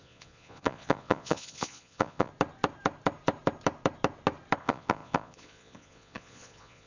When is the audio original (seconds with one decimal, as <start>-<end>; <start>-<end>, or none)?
2.3-4.6